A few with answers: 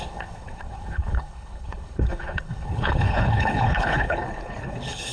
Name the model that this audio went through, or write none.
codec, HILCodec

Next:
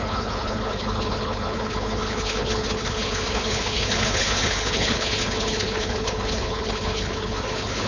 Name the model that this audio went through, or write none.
codec, HILCodec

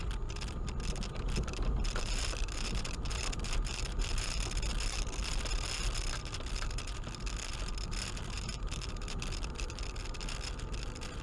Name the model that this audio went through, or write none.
none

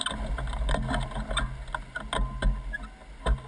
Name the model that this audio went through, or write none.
none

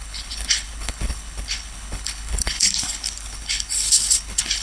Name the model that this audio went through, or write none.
codec, HILCodec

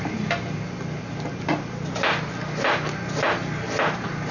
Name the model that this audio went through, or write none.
none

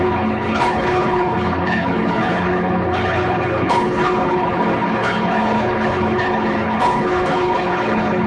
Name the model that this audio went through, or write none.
codec, HILCodec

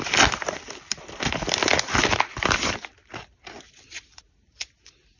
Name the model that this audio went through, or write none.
none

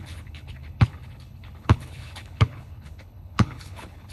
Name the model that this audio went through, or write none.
codec, HILCodec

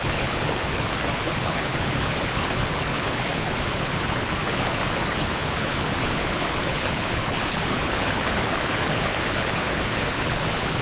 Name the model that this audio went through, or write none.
codec, HILCodec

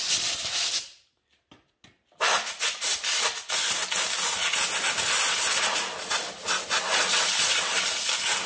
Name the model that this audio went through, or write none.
none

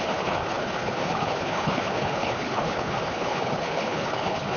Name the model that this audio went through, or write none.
codec, HILCodec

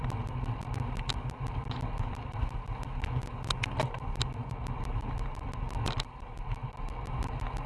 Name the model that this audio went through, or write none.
none